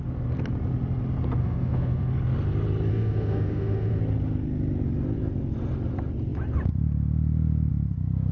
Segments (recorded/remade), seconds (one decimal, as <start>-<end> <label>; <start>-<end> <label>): 0.0-1.4 recorded; 1.4-2.1 remade; 2.1-2.9 recorded; 2.9-4.0 remade; 4.0-8.3 recorded